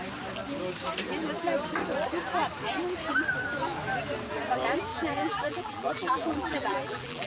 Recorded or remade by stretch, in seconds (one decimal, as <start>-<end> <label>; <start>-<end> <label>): 0.0-4.9 recorded; 4.9-7.3 remade